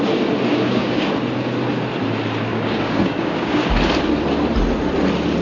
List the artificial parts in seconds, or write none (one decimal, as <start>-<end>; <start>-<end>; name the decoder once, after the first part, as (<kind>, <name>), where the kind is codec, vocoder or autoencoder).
0.5-1.1 (codec, DAC); 2.5-3.6

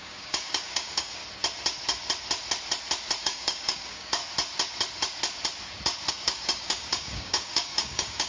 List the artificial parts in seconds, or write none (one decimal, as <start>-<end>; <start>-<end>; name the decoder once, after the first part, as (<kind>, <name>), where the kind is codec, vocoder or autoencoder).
0.0-1.2 (codec, DAC); 3.2-4.2; 6.1-8.3

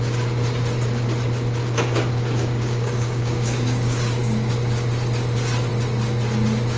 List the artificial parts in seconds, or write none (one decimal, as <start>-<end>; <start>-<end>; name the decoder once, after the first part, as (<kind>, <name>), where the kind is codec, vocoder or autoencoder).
1.6-4.5 (codec, DAC)

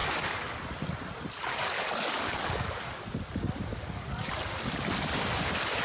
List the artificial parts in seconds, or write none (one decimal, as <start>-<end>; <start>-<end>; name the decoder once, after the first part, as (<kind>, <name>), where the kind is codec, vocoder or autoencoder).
0.0-0.6 (codec, DAC); 1.5-3.0; 3.7-4.3

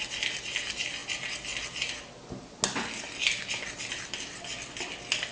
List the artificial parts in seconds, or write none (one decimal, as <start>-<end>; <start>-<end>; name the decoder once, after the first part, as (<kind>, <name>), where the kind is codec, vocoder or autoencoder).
none